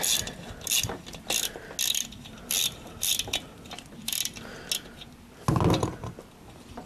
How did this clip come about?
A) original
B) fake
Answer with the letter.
A